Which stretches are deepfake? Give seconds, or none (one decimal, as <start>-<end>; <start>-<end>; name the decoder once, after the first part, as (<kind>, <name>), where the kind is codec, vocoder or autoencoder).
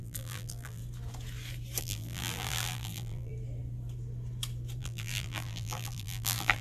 0.0-0.8 (vocoder, BigVGAN v2); 1.8-3.3; 4.8-6.6